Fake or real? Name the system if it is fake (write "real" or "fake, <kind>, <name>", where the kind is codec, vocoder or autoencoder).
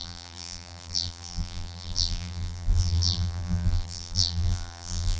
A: fake, vocoder, BigVGAN v2